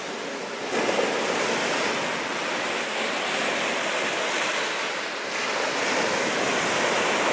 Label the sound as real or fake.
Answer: real